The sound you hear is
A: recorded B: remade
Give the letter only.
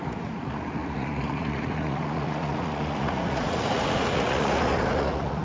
B